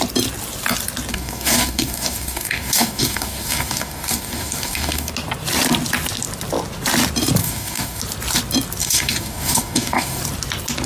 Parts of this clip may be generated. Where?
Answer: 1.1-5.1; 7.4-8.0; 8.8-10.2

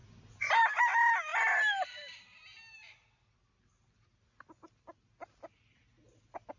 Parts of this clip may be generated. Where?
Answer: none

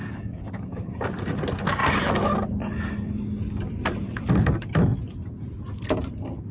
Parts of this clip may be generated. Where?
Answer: 0.0-0.9